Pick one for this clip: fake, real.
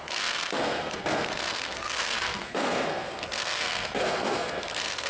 fake